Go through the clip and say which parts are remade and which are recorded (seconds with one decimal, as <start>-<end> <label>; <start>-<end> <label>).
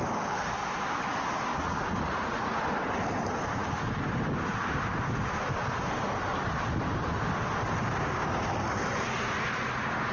0.0-1.5 recorded; 1.5-2.6 remade; 2.6-10.1 recorded